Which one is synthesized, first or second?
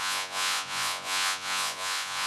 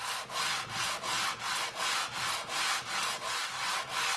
first